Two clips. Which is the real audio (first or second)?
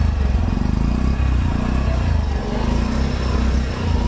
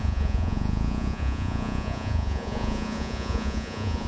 first